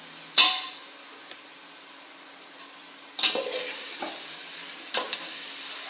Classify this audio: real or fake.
real